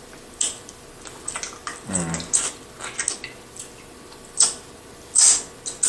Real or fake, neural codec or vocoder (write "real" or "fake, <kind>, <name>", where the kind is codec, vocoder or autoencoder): real